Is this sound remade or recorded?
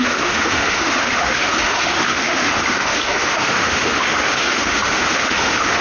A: remade